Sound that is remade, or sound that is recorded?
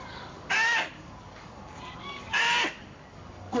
remade